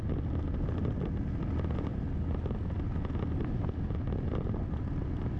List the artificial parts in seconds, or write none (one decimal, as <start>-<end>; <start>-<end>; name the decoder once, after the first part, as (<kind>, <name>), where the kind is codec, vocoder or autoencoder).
none